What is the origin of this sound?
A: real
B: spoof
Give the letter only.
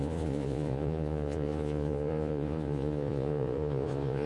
B